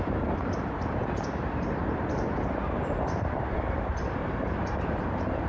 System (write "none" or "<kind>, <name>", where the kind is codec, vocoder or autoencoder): vocoder, BigVGAN v2